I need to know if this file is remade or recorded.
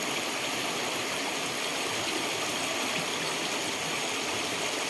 recorded